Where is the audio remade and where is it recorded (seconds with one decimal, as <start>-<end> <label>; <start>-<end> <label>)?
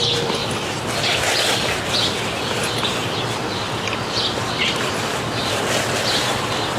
0.0-6.8 recorded